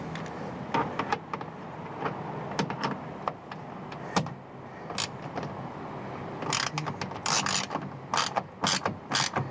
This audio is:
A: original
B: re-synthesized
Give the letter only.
A